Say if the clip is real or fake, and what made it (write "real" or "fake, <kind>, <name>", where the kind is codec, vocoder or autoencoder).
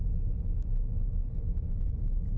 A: real